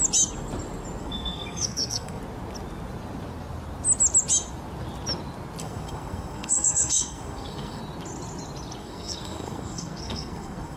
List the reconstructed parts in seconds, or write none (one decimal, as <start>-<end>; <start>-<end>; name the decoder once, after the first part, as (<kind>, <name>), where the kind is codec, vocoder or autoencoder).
1.0-2.2 (codec, SNAC); 5.6-7.8; 8.8-10.8